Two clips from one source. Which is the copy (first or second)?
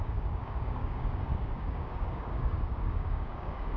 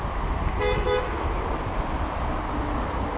first